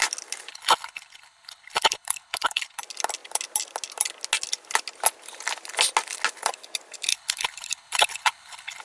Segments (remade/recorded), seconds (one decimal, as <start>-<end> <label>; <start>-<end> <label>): 0.0-0.5 recorded; 0.5-2.8 remade; 2.8-7.1 recorded; 7.1-8.8 remade